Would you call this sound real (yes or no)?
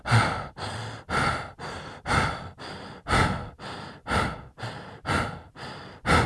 yes